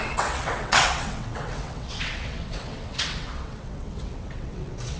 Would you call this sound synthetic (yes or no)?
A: yes